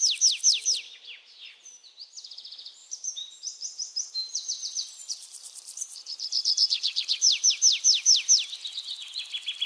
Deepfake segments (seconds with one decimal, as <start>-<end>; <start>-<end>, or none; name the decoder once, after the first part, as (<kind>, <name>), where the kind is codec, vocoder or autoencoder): 2.8-7.5 (vocoder, BigVGAN v2)